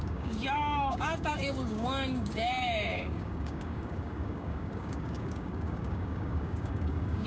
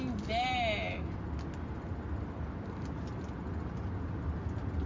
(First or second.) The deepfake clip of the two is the first